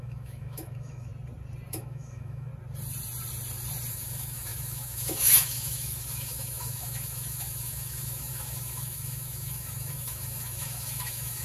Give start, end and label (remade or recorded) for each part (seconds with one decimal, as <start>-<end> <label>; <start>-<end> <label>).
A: 0.0-1.1 remade; 1.1-1.7 recorded; 1.7-2.5 remade; 2.5-3.9 recorded; 3.9-11.4 remade